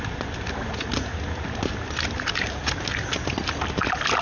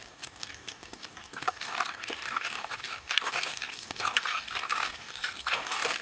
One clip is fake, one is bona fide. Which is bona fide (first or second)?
first